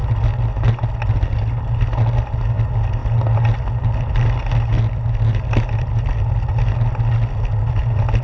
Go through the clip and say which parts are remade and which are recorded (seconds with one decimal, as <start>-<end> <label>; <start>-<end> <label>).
0.0-8.2 recorded